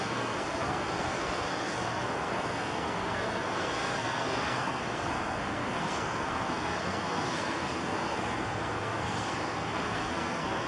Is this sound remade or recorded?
remade